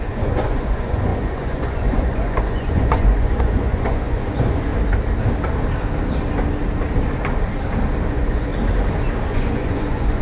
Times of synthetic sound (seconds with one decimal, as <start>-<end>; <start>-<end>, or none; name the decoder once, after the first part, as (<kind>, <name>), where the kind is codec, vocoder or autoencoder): 0.0-4.7 (vocoder, Vocos); 8.1-8.5; 9.3-10.2